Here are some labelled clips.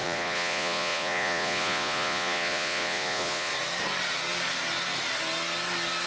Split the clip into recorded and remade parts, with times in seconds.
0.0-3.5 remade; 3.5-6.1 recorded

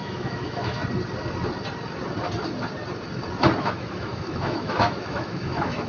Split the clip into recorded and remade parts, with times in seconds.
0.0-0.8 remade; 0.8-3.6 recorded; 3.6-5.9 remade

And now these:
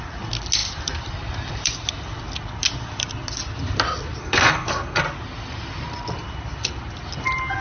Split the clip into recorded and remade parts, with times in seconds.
0.0-4.2 recorded; 4.2-5.0 remade; 5.0-7.6 recorded